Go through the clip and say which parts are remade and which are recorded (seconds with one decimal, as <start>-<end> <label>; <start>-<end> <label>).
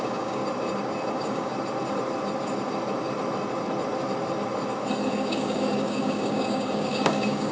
0.0-0.4 remade; 0.4-1.1 recorded; 1.1-1.5 remade; 1.5-5.1 recorded; 5.1-7.5 remade